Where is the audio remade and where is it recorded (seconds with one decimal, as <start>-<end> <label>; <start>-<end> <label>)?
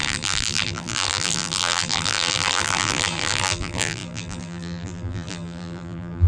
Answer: 0.0-6.3 remade